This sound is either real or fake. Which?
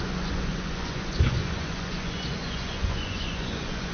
fake